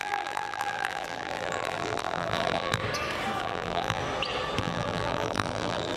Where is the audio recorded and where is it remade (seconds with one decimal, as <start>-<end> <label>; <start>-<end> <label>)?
0.0-2.8 remade; 2.8-3.4 recorded; 3.4-4.0 remade; 4.0-4.6 recorded; 4.6-6.0 remade